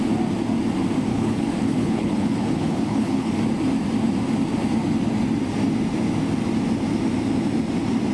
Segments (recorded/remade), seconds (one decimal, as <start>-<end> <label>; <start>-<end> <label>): 0.0-1.1 recorded; 1.1-3.3 remade; 3.3-8.1 recorded

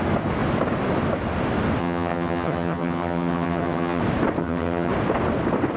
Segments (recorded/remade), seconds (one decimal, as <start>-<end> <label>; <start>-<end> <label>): 0.0-1.8 recorded; 1.8-4.0 remade; 4.0-4.4 recorded; 4.4-4.9 remade; 4.9-5.8 recorded

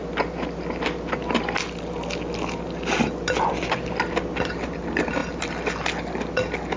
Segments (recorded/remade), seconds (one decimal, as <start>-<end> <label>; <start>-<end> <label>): 0.0-6.8 recorded